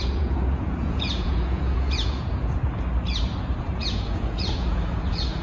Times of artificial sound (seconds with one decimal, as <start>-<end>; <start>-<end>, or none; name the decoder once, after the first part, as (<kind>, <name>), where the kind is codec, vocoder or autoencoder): 0.0-2.6 (vocoder, Vocos); 3.6-5.4